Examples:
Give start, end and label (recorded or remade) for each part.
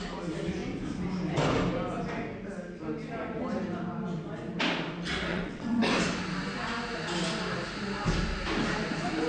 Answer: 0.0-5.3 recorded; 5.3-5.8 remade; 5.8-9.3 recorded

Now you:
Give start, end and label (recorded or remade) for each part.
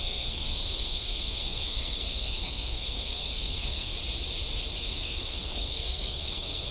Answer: 0.0-3.9 remade; 3.9-4.8 recorded; 4.8-6.7 remade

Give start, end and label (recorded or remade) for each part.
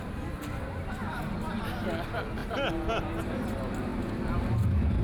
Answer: 0.0-5.0 recorded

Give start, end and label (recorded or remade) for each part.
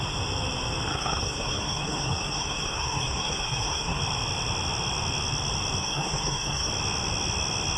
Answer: 0.0-0.9 recorded; 0.9-4.0 remade; 4.0-5.8 recorded; 5.8-6.7 remade; 6.7-7.8 recorded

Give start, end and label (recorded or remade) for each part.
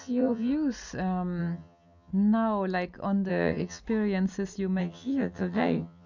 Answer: 0.0-0.5 remade; 0.5-1.4 recorded; 1.4-2.1 remade; 2.1-3.3 recorded; 3.3-3.8 remade; 3.8-4.8 recorded; 4.8-6.1 remade